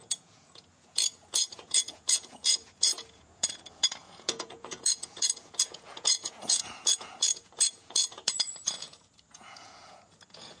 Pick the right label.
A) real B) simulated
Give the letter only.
B